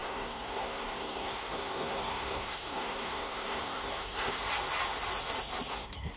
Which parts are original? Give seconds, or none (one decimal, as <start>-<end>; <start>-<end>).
4.4-5.7